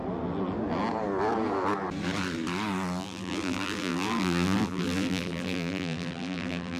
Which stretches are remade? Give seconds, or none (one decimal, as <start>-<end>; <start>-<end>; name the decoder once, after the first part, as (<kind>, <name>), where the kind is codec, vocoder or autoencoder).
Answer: 3.0-6.8 (vocoder, BigVGAN v2)